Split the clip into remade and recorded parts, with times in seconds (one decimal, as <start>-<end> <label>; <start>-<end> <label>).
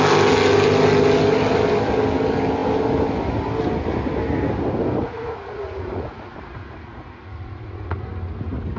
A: 0.0-5.0 recorded; 5.0-8.1 remade; 8.1-8.8 recorded